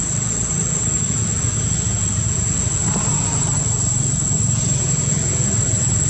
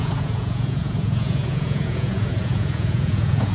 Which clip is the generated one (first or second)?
second